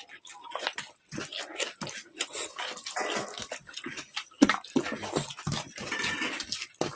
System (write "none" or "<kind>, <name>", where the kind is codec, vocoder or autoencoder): none